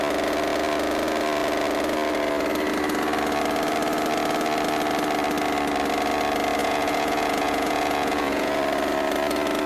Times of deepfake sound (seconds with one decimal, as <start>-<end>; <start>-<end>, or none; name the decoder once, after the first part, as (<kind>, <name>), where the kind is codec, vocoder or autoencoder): 6.6-8.6 (vocoder, Vocos)